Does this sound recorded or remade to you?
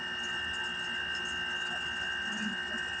recorded